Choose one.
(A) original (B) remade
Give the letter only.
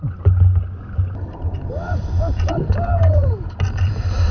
A